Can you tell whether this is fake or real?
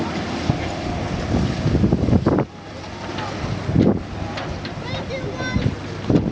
real